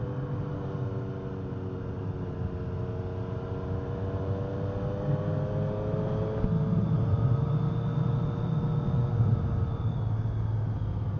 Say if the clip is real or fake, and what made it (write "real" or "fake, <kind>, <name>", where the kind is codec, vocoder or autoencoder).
real